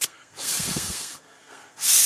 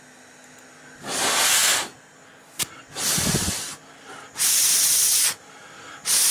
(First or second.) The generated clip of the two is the first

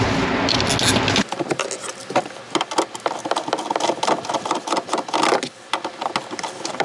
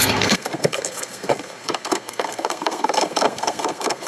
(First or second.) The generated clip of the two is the second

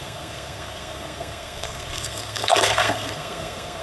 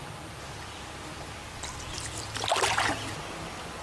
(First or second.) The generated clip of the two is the first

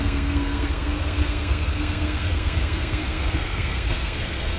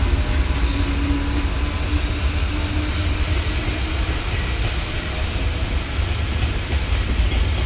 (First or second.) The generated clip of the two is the first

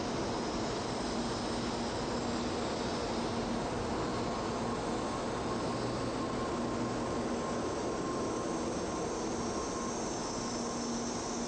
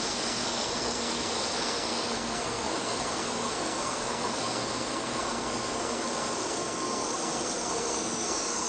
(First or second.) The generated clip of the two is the second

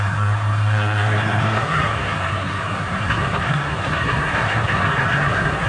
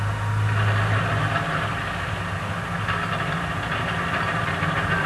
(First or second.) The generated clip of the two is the first